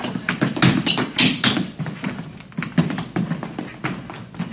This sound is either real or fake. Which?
real